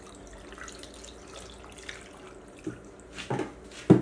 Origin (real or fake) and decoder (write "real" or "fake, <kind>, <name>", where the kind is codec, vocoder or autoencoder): real